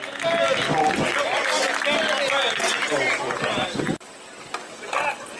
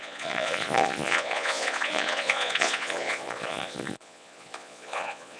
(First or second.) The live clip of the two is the first